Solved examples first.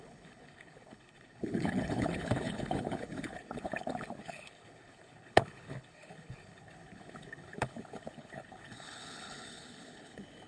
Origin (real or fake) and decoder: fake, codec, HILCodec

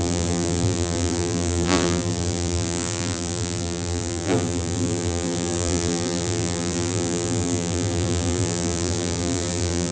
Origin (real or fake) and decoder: fake, vocoder, BigVGAN v2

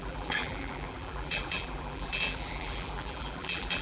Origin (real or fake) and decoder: fake, vocoder, BigVGAN v2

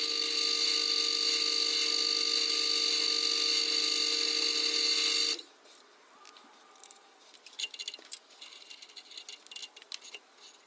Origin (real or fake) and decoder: real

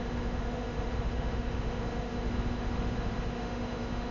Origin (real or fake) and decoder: fake, autoencoder, DAC-VAE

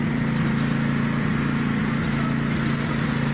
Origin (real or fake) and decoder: real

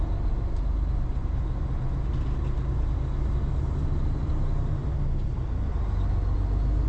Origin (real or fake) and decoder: real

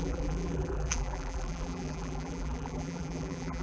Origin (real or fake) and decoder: fake, vocoder, BigVGAN v2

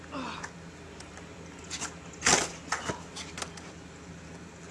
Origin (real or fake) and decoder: real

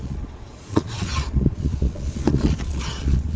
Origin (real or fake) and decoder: fake, vocoder, Vocos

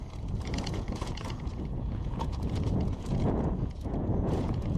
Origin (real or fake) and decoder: fake, vocoder, Vocos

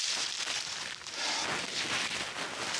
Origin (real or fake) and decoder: real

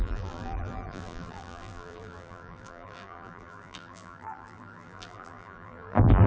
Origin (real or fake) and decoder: fake, vocoder, BigVGAN v2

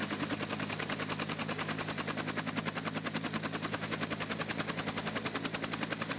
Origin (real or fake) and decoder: real